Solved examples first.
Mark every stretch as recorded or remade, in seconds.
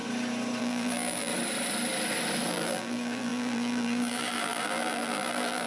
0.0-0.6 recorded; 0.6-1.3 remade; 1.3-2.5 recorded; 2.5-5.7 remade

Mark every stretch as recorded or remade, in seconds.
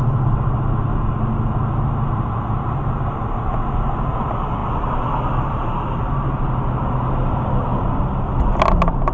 0.0-9.1 recorded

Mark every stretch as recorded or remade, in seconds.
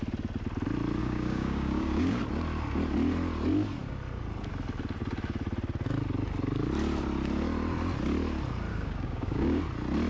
0.0-1.0 recorded; 1.0-2.2 remade; 2.2-8.7 recorded; 8.7-9.6 remade; 9.6-10.1 recorded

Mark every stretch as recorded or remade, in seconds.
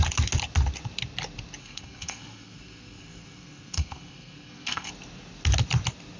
0.0-1.6 recorded; 1.6-4.9 remade; 4.9-6.2 recorded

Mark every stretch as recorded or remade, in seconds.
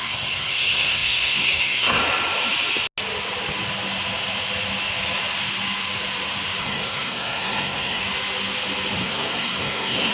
0.0-2.0 remade; 2.0-6.6 recorded; 6.6-8.0 remade; 8.0-9.0 recorded; 9.0-10.1 remade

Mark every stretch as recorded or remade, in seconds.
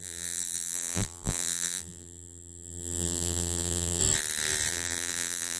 0.0-4.0 remade; 4.0-4.7 recorded; 4.7-5.6 remade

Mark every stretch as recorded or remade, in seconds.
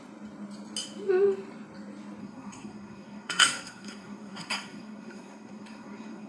0.0-2.2 recorded; 2.2-6.3 remade